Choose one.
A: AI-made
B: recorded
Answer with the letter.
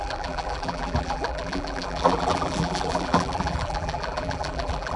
A